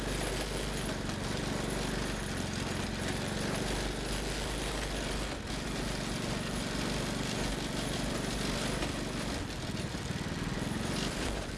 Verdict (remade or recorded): recorded